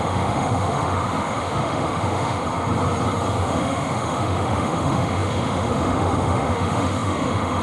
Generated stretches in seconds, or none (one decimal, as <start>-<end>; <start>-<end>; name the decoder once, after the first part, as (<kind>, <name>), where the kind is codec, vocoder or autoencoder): 0.0-2.5 (autoencoder, DAC-VAE); 3.4-7.6